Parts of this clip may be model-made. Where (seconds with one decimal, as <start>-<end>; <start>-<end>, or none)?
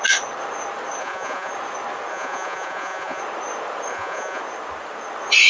1.0-1.5; 2.1-3.2; 3.9-4.4